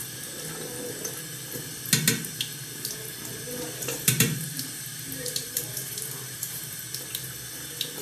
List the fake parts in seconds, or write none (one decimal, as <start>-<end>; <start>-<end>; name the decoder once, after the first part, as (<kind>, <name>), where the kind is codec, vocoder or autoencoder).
3.8-6.8 (vocoder, BigVGAN v2)